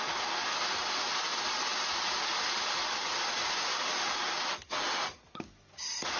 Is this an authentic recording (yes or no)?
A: yes